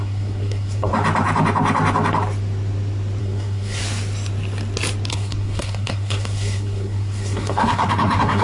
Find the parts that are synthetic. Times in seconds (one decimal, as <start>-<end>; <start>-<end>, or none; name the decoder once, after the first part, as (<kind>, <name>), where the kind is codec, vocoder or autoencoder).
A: 0.0-0.9 (codec, SNAC); 3.2-3.8; 5.1-8.4